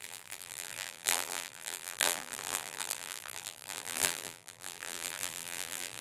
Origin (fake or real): fake